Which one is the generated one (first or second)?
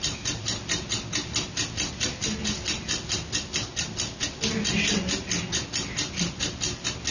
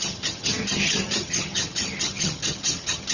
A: second